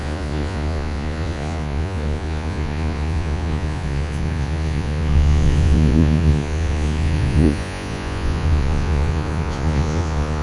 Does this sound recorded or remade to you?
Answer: remade